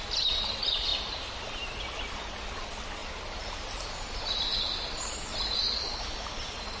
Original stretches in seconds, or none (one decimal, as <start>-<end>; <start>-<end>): 0.0-6.8